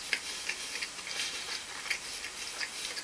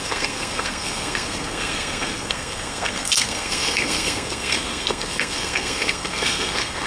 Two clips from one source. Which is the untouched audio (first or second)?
first